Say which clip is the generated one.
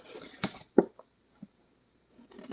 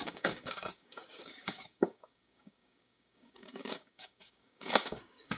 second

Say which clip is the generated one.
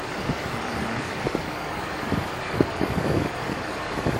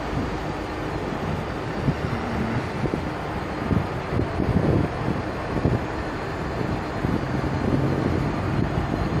first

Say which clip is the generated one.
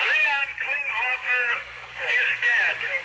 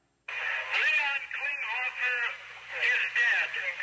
first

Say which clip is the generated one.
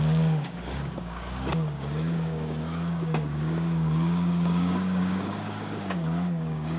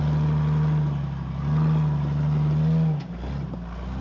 first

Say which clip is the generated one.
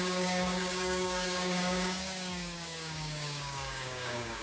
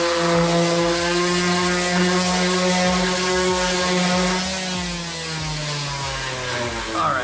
first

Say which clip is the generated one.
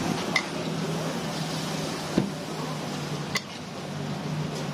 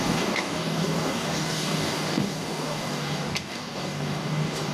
second